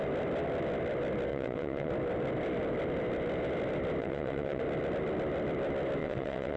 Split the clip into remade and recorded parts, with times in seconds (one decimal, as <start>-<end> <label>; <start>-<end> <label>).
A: 0.0-1.3 recorded; 1.3-1.9 remade; 1.9-4.0 recorded; 4.0-4.6 remade; 4.6-6.0 recorded; 6.0-6.6 remade